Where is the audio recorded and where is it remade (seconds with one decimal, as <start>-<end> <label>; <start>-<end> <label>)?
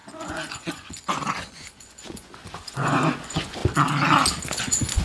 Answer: 0.0-3.6 remade; 3.6-4.6 recorded; 4.6-5.0 remade